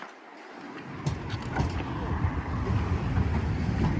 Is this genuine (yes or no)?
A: yes